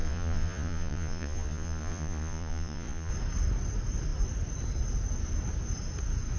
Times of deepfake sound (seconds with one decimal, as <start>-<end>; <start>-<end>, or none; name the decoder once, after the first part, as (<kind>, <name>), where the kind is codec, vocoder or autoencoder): 0.0-3.1 (vocoder, Vocos)